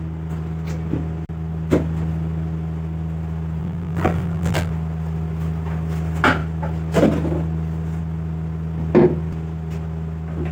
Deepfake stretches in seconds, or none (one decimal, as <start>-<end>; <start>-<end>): 3.6-4.7